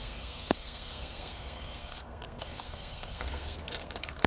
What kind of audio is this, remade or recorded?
remade